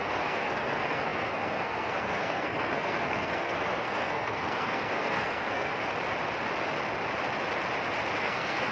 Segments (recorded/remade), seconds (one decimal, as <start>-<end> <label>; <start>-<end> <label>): 0.0-5.7 remade; 5.7-8.2 recorded; 8.2-8.7 remade